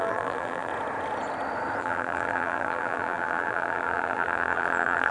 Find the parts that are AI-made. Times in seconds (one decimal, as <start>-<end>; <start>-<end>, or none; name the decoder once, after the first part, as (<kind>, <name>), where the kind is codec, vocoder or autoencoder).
0.0-0.7 (vocoder, BigVGAN v2); 1.8-5.1